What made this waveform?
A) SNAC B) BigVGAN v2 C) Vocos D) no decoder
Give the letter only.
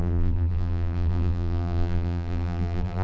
B